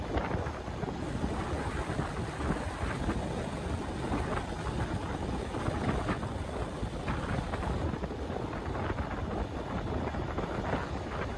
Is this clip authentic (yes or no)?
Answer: yes